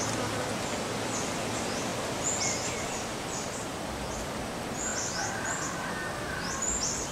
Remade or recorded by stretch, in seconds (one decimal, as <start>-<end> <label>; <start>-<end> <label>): 0.0-7.1 recorded